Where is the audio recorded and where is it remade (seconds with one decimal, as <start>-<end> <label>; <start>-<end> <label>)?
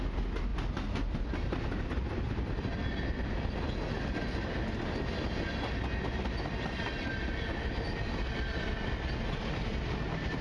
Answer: 0.0-10.4 recorded